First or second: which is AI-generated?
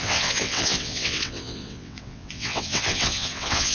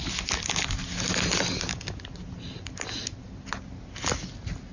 first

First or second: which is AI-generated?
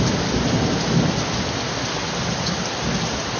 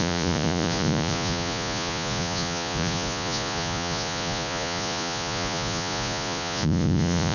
second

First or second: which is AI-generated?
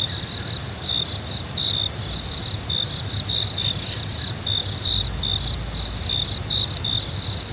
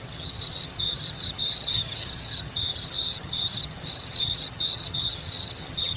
second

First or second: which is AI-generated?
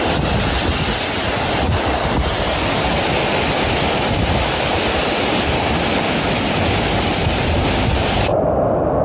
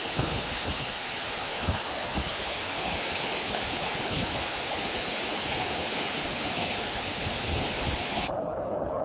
second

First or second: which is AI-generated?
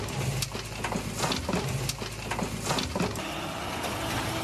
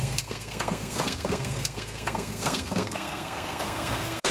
second